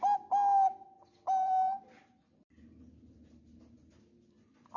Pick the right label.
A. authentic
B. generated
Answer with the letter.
A